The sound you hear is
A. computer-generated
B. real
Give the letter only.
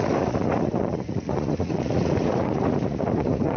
A